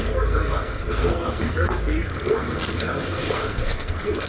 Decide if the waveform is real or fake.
fake